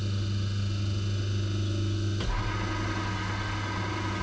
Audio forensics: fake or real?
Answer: real